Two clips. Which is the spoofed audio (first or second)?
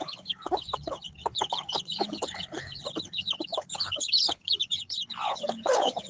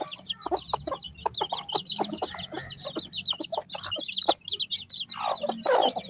first